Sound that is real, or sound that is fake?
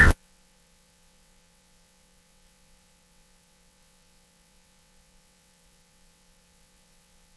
fake